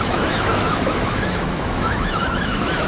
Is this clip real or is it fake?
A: fake